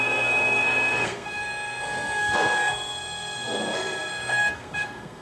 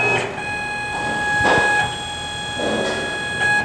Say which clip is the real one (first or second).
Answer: second